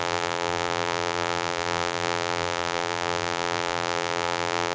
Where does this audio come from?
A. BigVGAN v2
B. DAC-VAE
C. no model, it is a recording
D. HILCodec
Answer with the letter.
A